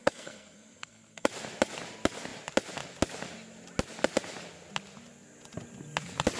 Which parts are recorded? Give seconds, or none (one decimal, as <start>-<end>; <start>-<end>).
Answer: 1.3-6.4